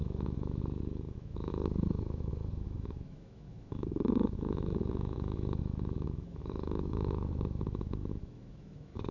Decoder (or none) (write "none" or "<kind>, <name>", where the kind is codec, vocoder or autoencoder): autoencoder, DAC-VAE